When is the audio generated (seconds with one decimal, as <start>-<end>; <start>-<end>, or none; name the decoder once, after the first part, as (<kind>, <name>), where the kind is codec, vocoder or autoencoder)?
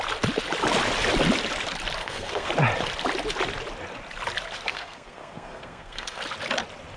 2.0-2.5 (codec, SNAC); 4.7-6.2